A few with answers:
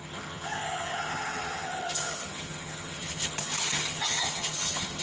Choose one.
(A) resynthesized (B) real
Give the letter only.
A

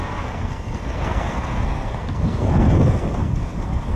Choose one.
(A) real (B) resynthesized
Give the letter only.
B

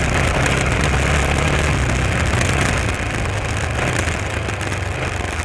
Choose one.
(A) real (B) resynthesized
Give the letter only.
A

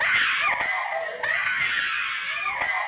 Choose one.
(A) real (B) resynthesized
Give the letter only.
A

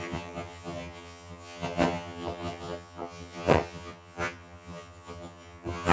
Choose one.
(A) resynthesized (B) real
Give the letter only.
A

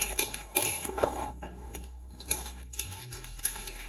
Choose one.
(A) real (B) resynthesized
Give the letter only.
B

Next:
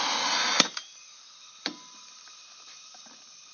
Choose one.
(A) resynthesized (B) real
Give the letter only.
B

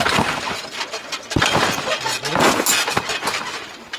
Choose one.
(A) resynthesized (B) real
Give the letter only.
B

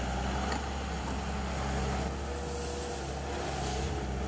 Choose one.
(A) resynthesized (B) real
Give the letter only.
B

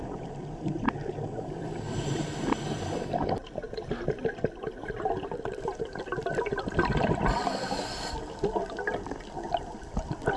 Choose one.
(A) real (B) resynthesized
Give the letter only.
A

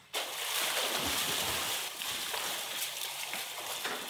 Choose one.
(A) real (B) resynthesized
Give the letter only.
A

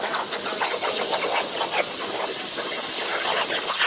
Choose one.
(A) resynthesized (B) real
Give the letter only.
B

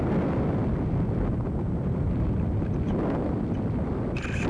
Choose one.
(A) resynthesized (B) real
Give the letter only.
B